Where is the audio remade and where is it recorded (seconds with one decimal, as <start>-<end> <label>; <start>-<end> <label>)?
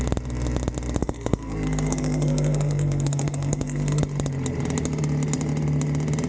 0.0-1.0 recorded; 1.0-4.0 remade; 4.0-6.3 recorded